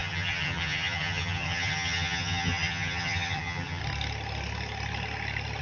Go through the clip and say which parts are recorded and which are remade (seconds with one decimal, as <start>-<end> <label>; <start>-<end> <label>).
0.0-3.8 remade; 3.8-5.6 recorded